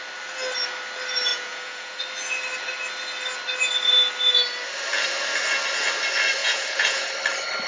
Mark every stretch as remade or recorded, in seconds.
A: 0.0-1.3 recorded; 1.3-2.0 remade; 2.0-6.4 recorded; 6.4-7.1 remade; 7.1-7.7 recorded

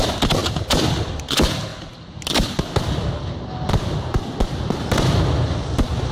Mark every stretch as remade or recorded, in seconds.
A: 0.0-6.1 recorded